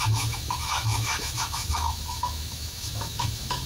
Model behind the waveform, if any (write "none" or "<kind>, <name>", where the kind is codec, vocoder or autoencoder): autoencoder, DAC-VAE